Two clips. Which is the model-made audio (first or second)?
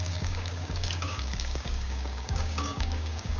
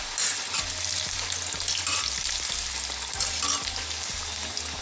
first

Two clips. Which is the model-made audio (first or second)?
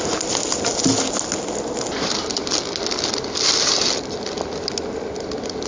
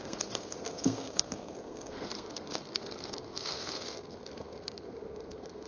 second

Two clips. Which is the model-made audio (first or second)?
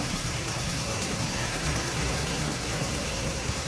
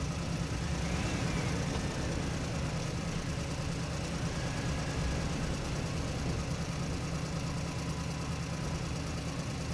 first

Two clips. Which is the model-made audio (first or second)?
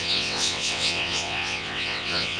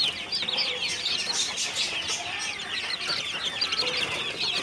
first